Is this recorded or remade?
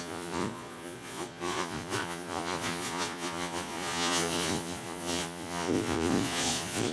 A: remade